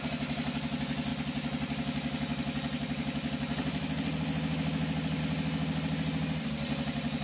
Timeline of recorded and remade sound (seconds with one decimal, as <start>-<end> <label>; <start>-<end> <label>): 0.0-7.2 recorded